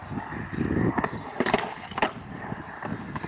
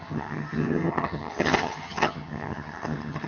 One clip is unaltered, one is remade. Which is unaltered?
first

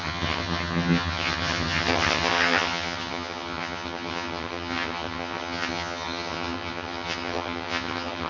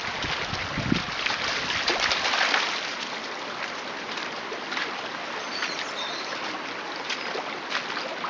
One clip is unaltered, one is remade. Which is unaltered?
second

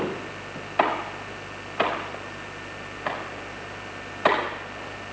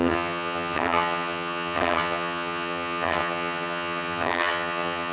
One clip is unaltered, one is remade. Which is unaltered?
first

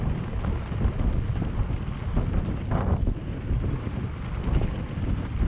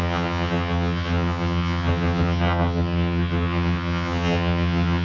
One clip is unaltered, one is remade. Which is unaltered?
first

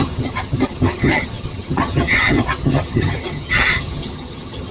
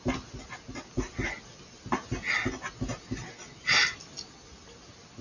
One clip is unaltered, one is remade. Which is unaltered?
second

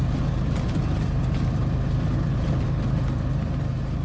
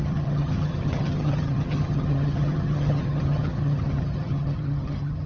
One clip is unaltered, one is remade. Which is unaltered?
first